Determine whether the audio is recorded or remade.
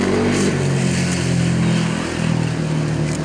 recorded